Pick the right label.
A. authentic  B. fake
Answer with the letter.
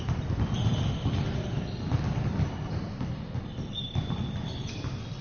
B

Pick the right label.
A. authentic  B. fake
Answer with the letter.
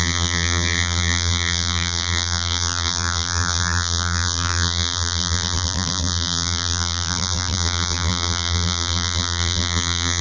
B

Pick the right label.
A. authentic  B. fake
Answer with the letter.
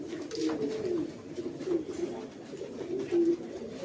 A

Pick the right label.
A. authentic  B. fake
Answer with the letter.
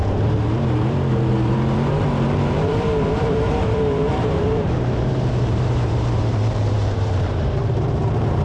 B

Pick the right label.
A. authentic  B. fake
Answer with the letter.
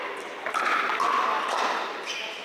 B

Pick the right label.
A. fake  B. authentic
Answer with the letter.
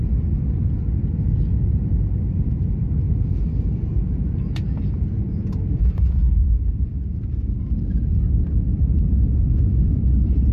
A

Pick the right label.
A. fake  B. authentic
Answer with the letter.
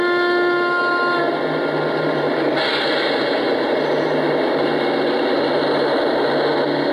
B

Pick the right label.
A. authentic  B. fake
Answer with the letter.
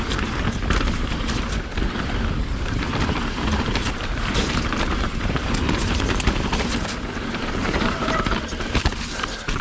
B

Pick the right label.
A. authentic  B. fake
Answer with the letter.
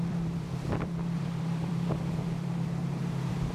B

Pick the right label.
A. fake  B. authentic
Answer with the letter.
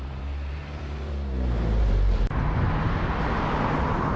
A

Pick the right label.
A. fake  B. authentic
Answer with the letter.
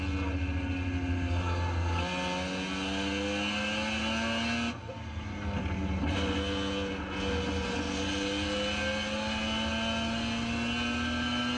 B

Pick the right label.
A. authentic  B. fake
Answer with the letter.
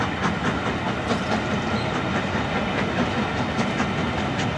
A